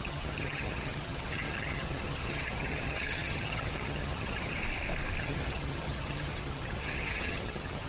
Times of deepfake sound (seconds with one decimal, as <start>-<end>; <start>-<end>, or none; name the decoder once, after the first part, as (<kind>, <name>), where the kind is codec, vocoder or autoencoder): 0.0-4.6 (vocoder, HiFi-GAN); 5.2-7.9